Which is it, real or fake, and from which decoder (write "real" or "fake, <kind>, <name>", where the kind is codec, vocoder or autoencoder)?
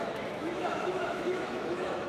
fake, autoencoder, DAC-VAE